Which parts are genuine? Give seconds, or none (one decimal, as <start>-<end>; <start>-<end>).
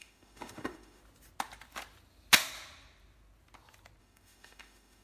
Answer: 1.0-4.0